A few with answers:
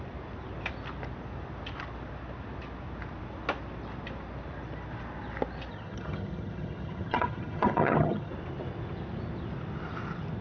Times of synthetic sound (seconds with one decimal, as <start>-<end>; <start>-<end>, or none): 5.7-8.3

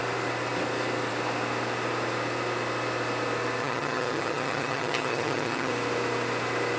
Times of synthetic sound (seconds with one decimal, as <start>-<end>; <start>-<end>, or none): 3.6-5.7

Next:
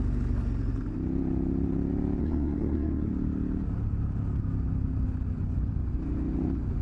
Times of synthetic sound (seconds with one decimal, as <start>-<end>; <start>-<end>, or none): 2.2-3.1

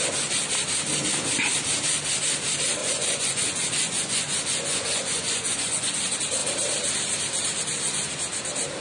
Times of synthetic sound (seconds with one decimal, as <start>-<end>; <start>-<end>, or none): 2.8-6.0

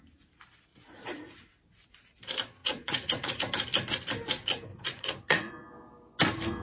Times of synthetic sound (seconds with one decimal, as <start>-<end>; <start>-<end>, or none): 0.7-1.5; 2.6-3.4; 4.7-5.5

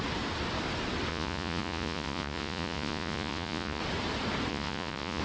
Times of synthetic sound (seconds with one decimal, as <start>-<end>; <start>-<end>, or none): 1.1-3.8; 4.5-5.2